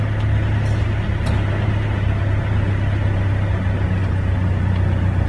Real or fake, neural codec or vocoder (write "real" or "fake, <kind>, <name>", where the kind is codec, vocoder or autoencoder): real